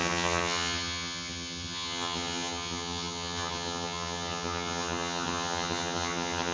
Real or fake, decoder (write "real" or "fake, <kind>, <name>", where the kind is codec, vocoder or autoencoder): fake, vocoder, HiFi-GAN